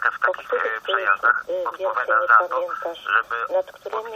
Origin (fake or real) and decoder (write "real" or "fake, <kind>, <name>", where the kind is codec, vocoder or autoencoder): real